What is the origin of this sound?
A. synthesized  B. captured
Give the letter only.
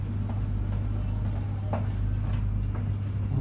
B